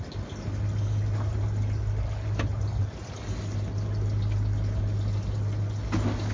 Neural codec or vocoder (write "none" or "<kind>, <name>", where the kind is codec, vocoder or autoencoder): none